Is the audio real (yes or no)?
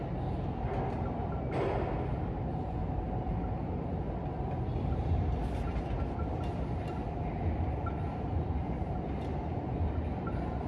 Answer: yes